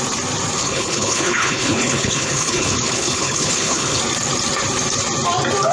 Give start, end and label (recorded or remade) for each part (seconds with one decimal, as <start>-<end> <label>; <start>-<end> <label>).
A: 0.0-0.6 recorded; 0.6-4.0 remade; 4.0-5.7 recorded